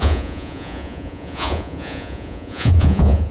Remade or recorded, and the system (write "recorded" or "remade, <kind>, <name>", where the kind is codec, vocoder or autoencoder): remade, vocoder, Vocos